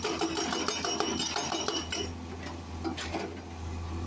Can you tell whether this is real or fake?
real